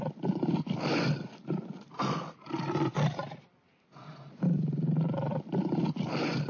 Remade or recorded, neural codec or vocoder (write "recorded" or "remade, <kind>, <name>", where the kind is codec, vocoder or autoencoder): recorded